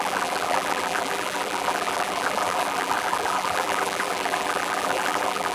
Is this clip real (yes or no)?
no